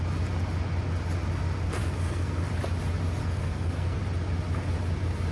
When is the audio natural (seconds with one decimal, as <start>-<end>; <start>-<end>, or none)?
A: 0.0-1.8; 2.5-3.2; 4.0-5.3